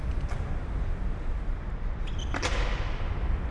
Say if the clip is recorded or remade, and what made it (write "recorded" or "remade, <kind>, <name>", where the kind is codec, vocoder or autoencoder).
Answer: recorded